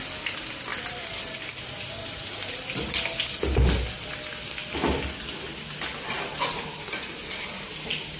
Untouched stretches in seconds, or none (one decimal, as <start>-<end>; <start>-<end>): 0.0-8.2